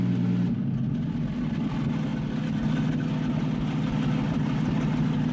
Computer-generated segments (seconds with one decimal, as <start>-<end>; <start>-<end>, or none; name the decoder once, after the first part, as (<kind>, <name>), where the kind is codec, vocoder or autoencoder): none